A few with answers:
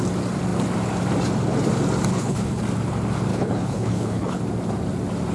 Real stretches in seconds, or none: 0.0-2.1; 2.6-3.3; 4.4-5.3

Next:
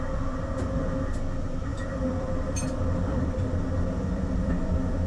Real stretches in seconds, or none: 0.0-1.7

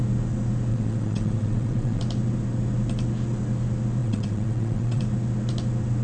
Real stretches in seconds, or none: 0.0-0.7; 2.0-4.0; 5.0-6.0

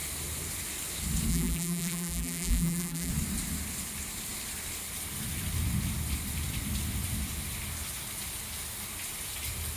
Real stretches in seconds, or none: 0.0-1.3; 3.1-9.8

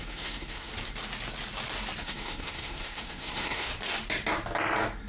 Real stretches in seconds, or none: 0.7-2.0; 3.7-5.1

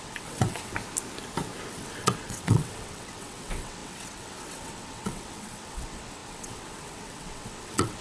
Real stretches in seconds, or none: 0.7-1.7

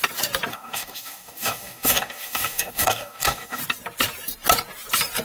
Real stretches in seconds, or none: 0.0-0.5; 3.6-5.2

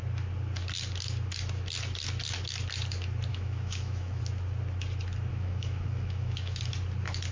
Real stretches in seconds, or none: 0.0-3.3; 4.2-5.3; 6.6-7.3